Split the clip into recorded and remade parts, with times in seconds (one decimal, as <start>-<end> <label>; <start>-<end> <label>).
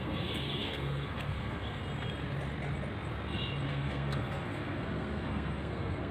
0.0-1.8 remade; 1.8-3.7 recorded; 3.7-6.1 remade